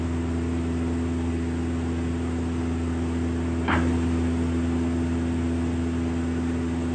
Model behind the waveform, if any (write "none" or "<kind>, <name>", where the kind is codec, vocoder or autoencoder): none